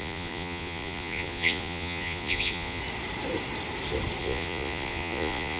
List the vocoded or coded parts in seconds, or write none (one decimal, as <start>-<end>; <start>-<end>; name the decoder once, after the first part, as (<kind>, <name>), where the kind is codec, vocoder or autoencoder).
0.0-2.8 (vocoder, Vocos); 4.2-5.6